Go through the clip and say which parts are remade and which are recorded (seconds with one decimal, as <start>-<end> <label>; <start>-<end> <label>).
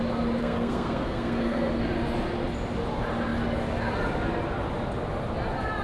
0.0-0.4 recorded; 0.4-1.7 remade; 1.7-5.8 recorded